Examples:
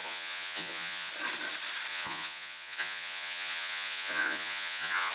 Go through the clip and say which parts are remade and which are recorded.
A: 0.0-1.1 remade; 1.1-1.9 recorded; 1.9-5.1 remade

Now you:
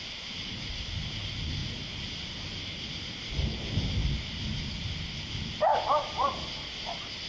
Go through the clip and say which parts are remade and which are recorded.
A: 0.0-1.6 recorded; 1.6-2.6 remade; 2.6-4.0 recorded; 4.0-5.6 remade; 5.6-7.3 recorded

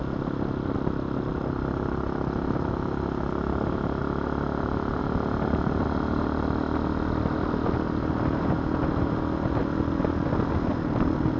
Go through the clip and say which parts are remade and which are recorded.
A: 0.0-11.4 recorded

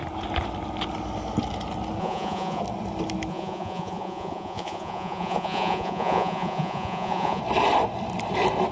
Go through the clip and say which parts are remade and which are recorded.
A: 0.0-2.0 recorded; 2.0-2.6 remade; 2.6-3.3 recorded; 3.3-7.4 remade; 7.4-8.7 recorded

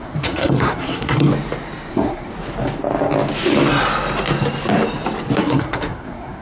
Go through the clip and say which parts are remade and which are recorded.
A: 0.0-1.3 remade; 1.3-1.9 recorded; 1.9-2.3 remade; 2.3-5.4 recorded; 5.4-6.4 remade

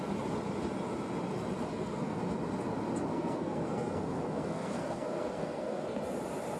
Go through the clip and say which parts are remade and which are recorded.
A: 0.0-1.7 recorded; 1.7-2.2 remade; 2.2-3.1 recorded; 3.1-6.0 remade; 6.0-6.6 recorded

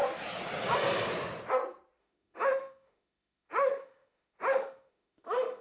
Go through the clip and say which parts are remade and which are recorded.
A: 0.0-2.0 recorded; 2.0-5.6 remade